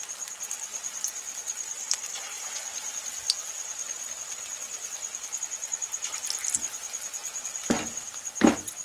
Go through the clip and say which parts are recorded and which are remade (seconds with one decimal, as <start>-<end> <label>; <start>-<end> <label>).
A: 0.0-8.8 recorded